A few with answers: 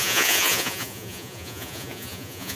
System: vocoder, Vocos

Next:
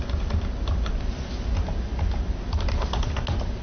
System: none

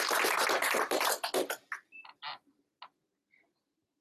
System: none